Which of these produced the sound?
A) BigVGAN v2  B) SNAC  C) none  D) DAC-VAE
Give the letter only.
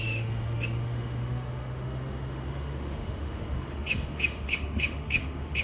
D